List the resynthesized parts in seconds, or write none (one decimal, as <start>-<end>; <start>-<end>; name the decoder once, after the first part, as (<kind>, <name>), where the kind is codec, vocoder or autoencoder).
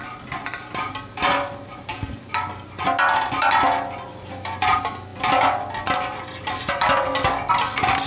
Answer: none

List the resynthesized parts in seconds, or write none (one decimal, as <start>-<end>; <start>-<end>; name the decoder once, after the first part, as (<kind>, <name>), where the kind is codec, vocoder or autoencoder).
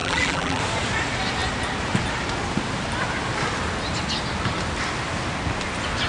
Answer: 0.0-0.6 (vocoder, BigVGAN v2)